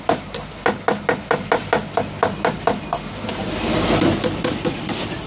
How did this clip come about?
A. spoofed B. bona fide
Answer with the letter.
B